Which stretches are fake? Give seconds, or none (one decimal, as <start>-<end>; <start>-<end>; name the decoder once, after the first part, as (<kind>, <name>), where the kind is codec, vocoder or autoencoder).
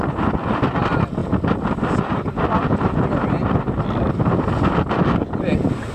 none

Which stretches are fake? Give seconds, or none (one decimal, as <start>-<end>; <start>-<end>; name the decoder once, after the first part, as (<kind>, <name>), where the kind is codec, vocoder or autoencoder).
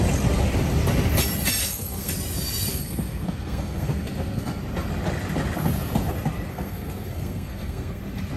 1.6-2.1 (codec, SNAC); 2.7-4.6; 6.5-8.0